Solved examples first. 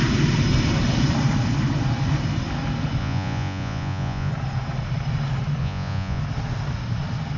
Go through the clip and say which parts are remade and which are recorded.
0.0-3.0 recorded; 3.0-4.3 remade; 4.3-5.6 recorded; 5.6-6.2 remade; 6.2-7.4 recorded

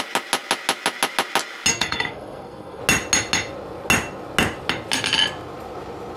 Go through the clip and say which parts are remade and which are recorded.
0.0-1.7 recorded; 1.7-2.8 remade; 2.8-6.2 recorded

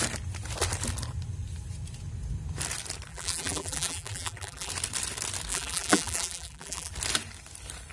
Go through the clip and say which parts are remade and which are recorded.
0.0-3.1 recorded; 3.1-4.7 remade; 4.7-5.5 recorded; 5.5-6.9 remade; 6.9-7.9 recorded